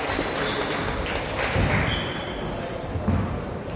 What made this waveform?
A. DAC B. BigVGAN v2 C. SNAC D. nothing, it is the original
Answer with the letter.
D